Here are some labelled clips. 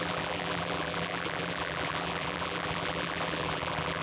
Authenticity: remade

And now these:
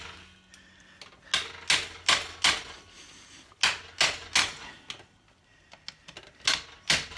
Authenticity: recorded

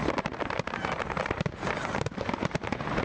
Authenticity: remade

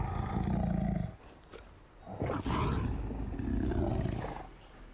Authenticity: recorded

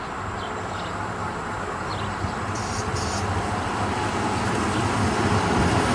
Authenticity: remade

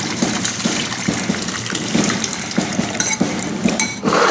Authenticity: remade